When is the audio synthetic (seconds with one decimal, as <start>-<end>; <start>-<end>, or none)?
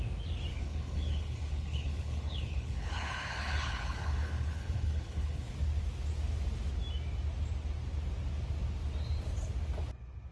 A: 0.5-5.5